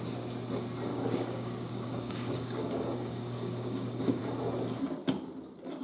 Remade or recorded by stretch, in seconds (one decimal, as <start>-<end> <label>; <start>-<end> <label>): 0.0-0.9 recorded; 0.9-4.2 remade; 4.2-5.8 recorded